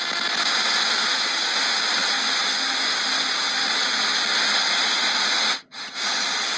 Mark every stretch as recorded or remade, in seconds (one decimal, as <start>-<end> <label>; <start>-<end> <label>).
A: 0.0-6.6 recorded